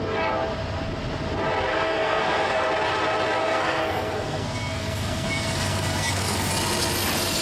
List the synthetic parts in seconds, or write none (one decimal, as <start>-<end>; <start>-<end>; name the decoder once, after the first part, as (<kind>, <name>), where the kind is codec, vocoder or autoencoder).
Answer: 1.7-2.7 (codec, SNAC); 3.4-6.5